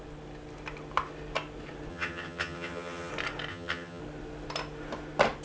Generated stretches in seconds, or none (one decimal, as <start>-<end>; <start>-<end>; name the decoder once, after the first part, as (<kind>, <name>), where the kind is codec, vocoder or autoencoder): 1.9-3.1 (vocoder, HiFi-GAN); 3.5-4.0